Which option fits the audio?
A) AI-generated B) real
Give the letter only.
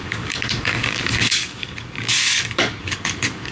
A